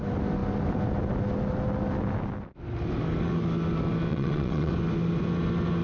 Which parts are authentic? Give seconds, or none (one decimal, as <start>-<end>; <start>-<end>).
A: 0.0-4.1; 4.7-5.8